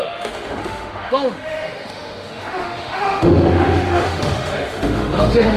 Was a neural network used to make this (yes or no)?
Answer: yes